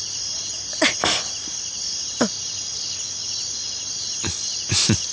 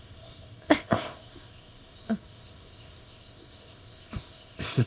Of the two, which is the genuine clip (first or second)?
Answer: first